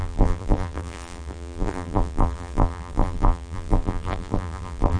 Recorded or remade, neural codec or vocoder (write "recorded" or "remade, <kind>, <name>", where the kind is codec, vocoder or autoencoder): remade, vocoder, BigVGAN v2